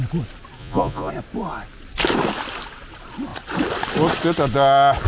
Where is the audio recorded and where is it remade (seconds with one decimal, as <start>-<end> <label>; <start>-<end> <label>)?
0.0-0.6 recorded; 0.6-1.1 remade; 1.1-5.1 recorded